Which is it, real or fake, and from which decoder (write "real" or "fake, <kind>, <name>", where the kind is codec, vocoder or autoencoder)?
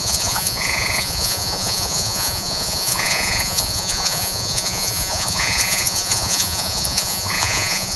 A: fake, vocoder, Vocos